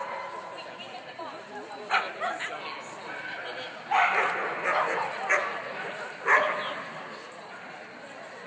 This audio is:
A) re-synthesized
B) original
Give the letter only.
B